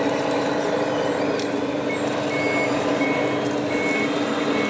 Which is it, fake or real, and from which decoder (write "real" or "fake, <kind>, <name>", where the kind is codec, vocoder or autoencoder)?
real